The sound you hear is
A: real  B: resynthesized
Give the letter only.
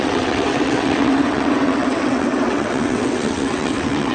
B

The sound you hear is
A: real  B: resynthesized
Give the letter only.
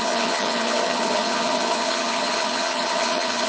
B